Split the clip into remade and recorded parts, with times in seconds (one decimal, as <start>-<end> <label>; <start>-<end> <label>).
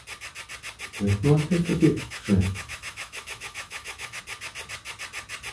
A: 0.0-1.7 recorded; 1.7-4.2 remade; 4.2-5.5 recorded